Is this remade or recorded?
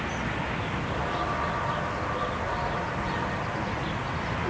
recorded